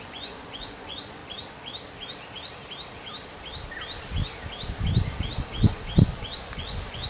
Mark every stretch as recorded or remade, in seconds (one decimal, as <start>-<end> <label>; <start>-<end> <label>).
0.0-1.2 remade; 1.2-5.5 recorded; 5.5-7.1 remade